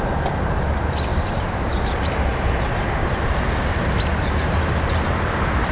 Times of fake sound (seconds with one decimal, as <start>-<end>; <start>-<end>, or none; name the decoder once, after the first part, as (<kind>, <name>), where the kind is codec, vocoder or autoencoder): 0.0-2.3 (vocoder, BigVGAN v2)